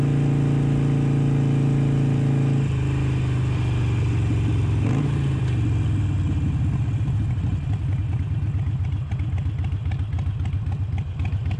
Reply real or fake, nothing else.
real